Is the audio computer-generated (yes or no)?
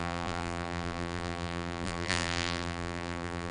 yes